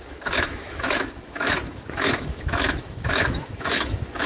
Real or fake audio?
fake